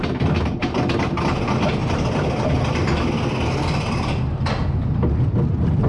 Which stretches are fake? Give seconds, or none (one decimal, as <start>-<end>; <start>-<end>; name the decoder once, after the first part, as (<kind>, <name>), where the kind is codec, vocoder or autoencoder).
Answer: 1.8-3.1 (vocoder, BigVGAN v2)